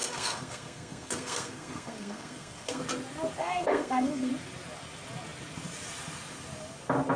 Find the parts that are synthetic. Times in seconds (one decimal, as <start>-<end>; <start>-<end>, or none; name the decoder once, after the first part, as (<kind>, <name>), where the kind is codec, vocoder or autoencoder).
0.0-2.8 (codec, SNAC); 3.4-4.3